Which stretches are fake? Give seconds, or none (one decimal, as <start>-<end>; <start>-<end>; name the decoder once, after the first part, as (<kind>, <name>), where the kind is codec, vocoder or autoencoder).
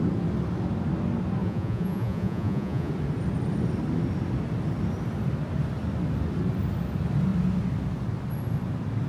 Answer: 1.4-2.9 (vocoder, Vocos)